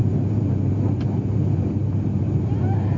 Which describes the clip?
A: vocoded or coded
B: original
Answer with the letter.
A